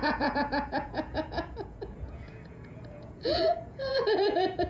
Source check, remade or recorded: remade